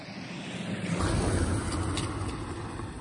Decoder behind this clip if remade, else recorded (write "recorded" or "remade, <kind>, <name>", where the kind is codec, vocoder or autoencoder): recorded